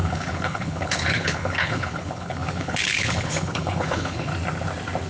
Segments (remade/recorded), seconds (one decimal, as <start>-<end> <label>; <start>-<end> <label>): 0.0-4.3 remade; 4.3-5.1 recorded